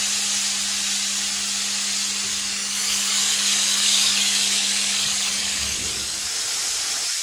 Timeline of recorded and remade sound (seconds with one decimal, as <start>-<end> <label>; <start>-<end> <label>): 0.0-2.3 recorded; 2.3-6.3 remade; 6.3-7.2 recorded